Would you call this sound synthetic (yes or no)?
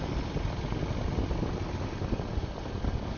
no